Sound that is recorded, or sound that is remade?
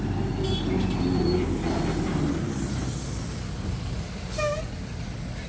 recorded